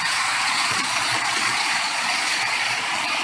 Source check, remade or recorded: remade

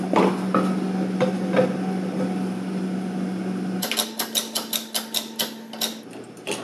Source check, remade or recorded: recorded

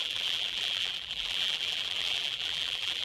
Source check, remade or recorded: remade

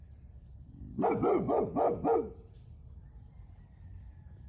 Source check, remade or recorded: recorded